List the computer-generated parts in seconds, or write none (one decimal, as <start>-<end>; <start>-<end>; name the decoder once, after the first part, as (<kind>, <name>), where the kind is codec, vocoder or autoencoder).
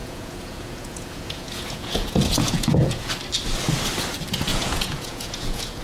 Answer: 0.0-3.1 (vocoder, Vocos); 4.5-5.8